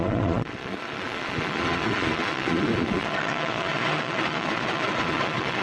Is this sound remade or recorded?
remade